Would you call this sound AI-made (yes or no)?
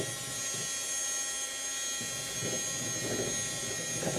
no